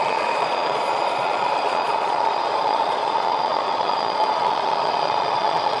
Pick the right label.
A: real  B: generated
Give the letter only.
B